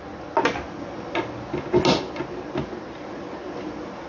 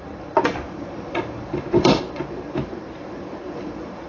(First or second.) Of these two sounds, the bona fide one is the first